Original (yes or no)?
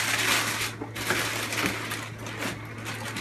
yes